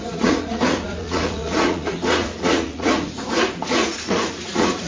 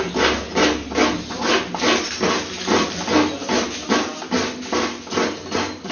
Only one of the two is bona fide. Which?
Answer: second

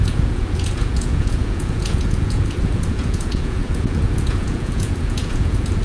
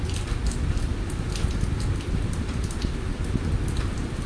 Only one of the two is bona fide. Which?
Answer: second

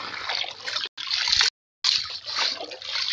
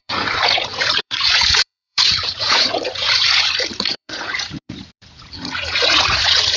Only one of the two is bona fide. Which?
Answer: first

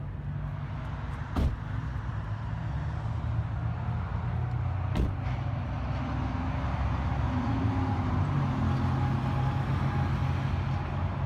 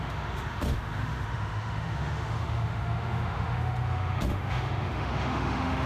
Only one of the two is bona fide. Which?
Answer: first